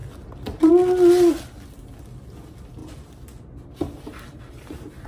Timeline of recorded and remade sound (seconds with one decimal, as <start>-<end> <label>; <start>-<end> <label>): 0.0-0.7 remade; 0.7-5.1 recorded